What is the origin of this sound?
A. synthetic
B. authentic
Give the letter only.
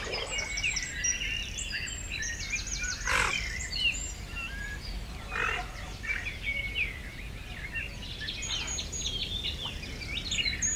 B